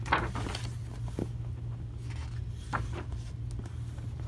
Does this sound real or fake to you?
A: real